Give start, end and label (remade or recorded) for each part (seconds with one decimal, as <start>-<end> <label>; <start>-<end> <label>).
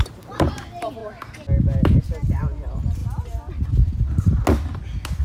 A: 0.0-1.0 remade; 1.0-2.0 recorded; 2.0-3.0 remade; 3.0-3.7 recorded; 3.7-4.3 remade; 4.3-5.2 recorded